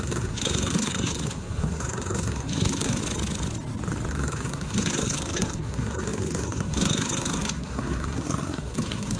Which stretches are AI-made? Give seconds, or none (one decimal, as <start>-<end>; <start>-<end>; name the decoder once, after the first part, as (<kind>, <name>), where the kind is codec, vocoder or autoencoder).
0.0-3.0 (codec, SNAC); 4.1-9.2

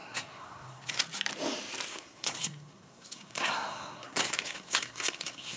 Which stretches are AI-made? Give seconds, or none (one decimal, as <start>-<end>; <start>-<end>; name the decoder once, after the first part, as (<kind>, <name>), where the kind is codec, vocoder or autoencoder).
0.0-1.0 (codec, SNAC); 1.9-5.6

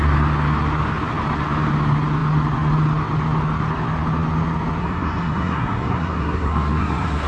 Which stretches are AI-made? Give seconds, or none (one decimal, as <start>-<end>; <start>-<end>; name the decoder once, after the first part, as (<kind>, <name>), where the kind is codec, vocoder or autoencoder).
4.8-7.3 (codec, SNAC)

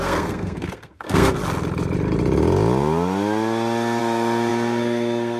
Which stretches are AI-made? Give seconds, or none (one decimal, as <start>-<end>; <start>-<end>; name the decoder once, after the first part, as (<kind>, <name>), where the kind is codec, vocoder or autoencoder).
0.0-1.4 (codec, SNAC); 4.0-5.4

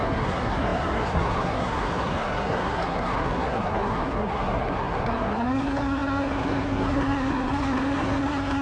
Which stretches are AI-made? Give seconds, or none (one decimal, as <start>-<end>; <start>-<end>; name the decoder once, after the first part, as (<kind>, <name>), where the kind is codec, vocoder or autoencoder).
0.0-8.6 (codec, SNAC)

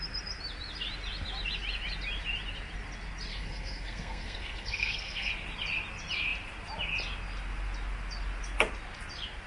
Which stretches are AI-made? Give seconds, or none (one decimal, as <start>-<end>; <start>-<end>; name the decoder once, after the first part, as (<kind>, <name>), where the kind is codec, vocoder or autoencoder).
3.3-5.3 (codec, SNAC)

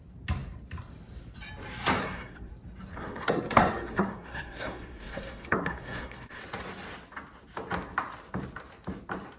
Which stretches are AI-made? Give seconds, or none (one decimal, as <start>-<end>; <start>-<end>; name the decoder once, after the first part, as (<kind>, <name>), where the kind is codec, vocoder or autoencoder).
2.0-2.5 (codec, SNAC); 2.9-6.4

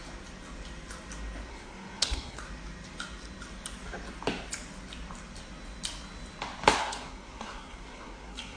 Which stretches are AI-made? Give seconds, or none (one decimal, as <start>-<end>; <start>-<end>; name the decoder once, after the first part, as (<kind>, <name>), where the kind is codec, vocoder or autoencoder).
1.5-2.4 (codec, SNAC); 6.8-8.6